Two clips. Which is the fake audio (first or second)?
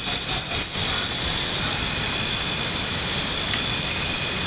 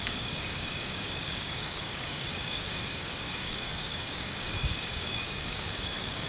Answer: second